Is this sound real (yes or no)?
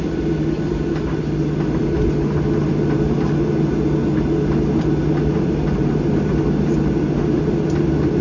yes